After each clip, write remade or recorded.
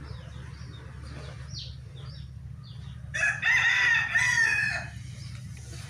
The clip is recorded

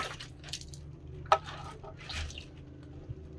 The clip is recorded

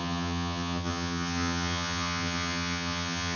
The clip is remade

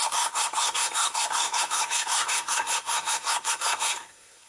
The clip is remade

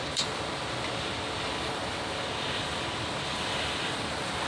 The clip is recorded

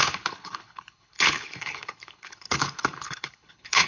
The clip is remade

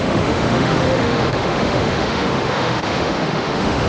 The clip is remade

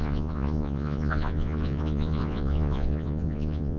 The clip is remade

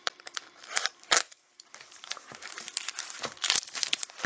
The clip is remade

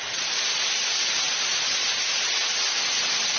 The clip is recorded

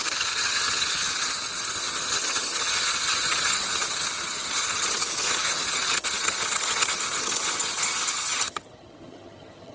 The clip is remade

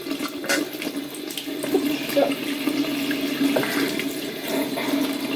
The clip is recorded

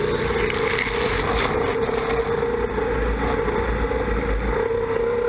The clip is recorded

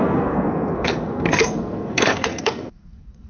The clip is remade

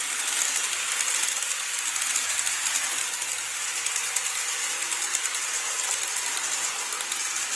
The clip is recorded